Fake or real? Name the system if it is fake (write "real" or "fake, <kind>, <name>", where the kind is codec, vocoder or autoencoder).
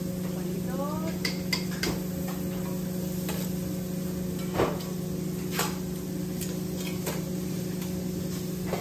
real